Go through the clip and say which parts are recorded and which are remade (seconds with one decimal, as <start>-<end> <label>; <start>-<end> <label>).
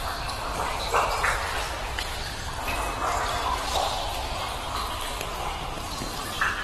0.0-1.9 remade; 1.9-3.5 recorded; 3.5-6.6 remade